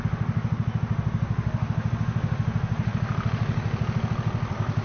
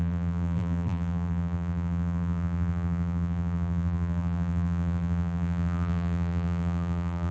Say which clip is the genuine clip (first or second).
first